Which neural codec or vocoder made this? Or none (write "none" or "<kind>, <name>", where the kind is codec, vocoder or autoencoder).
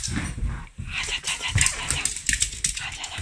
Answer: none